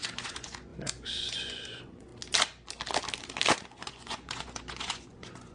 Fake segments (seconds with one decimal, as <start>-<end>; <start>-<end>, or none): 0.0-2.1; 3.5-5.5